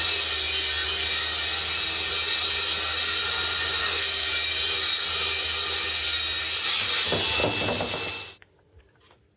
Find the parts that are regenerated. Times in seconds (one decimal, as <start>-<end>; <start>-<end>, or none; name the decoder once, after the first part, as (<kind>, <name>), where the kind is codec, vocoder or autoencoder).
3.8-4.3 (codec, SNAC)